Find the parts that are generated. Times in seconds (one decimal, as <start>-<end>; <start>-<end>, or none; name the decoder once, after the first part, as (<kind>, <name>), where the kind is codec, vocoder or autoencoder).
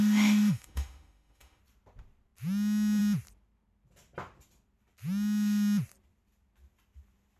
0.0-1.6 (autoencoder, DAC-VAE)